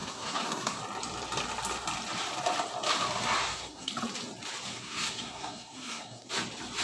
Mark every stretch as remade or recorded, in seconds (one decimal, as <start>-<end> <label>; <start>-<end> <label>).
0.0-0.8 remade; 0.8-3.4 recorded; 3.4-3.9 remade; 3.9-4.7 recorded; 4.7-6.3 remade; 6.3-6.8 recorded